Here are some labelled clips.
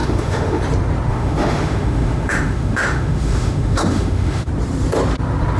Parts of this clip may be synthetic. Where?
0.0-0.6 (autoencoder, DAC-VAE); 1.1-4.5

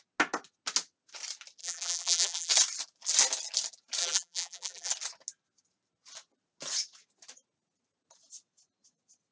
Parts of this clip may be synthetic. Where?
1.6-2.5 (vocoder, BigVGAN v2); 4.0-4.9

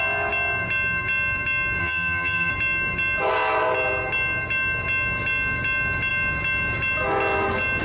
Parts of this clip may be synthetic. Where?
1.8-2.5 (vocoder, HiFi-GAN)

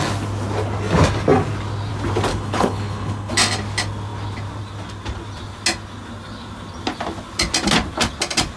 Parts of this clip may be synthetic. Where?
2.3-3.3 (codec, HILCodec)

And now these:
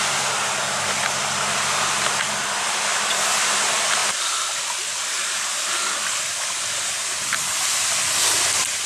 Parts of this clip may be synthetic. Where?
none

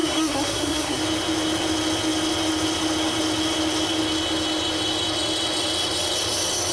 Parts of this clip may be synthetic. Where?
0.0-1.0 (codec, SNAC)